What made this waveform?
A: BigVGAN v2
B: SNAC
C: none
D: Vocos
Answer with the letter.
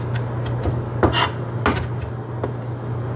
C